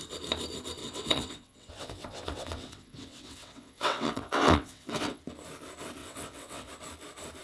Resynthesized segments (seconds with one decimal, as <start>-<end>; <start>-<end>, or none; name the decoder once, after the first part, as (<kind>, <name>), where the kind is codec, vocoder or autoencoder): 0.8-5.2 (vocoder, WaveNeXt); 6.0-6.7